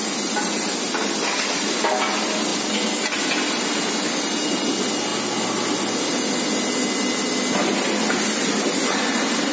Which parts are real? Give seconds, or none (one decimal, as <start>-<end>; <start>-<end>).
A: 0.0-9.5